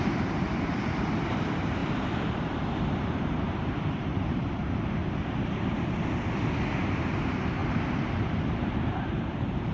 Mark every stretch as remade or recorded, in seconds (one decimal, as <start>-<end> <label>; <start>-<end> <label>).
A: 0.0-5.0 remade; 5.0-6.8 recorded; 6.8-7.6 remade; 7.6-8.5 recorded; 8.5-9.7 remade